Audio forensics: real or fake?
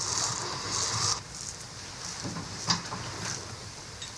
real